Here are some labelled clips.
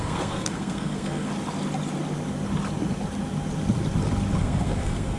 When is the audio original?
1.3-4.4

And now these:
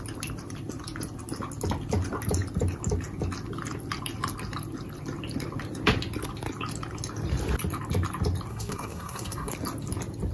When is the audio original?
0.0-8.5; 9.5-10.3